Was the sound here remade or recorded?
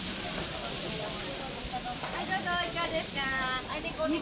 recorded